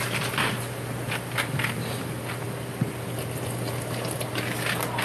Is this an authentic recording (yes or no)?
yes